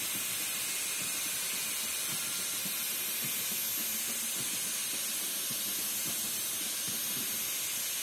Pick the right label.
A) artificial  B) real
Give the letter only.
B